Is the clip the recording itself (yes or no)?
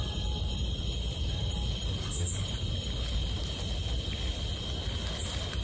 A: yes